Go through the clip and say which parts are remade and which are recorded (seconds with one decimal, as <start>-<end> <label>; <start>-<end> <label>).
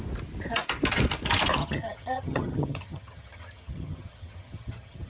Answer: 0.0-1.6 recorded; 1.6-5.1 remade